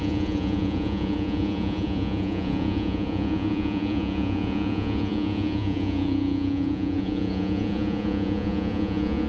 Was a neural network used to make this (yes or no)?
yes